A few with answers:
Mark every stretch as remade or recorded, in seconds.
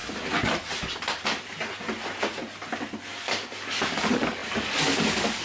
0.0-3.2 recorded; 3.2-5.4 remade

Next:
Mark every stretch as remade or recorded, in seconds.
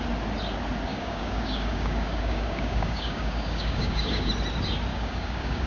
0.0-0.9 recorded; 0.9-4.3 remade; 4.3-4.9 recorded; 4.9-5.7 remade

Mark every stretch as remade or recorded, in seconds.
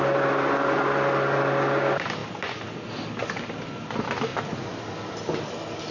0.0-5.9 recorded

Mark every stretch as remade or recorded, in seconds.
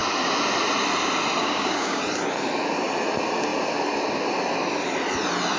0.0-1.4 recorded; 1.4-2.0 remade; 2.0-5.6 recorded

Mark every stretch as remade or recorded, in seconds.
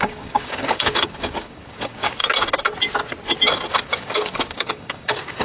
0.0-2.2 remade; 2.2-3.8 recorded; 3.8-5.4 remade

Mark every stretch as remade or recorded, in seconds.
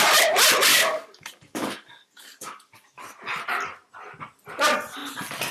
0.0-0.7 recorded; 0.7-3.0 remade; 3.0-5.5 recorded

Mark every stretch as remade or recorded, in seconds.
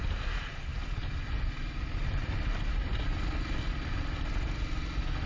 0.0-5.3 recorded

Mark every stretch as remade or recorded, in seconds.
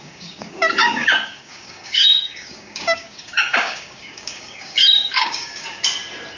0.0-5.8 remade; 5.8-6.4 recorded